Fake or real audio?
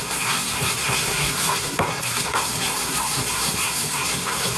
fake